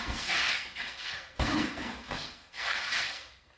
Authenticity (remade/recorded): remade